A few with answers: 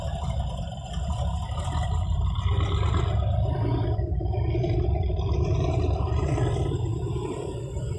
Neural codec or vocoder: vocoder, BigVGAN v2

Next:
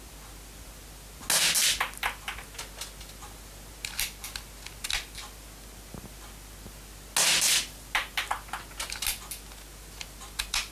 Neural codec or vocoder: none